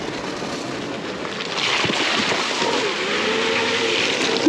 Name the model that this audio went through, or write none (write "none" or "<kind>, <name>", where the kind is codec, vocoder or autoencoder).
none